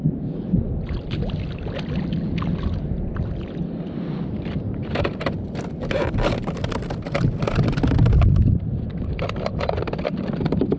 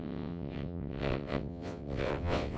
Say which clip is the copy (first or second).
second